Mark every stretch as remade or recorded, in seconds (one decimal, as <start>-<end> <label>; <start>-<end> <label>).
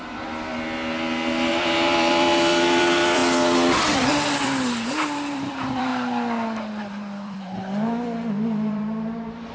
0.0-0.5 remade; 0.5-1.5 recorded; 1.5-3.2 remade; 3.2-4.1 recorded; 4.1-5.9 remade; 5.9-6.8 recorded; 6.8-9.5 remade